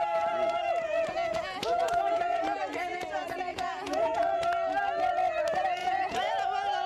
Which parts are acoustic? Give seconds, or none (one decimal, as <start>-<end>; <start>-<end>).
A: 0.0-1.3; 2.4-3.5; 4.4-5.8; 6.3-6.9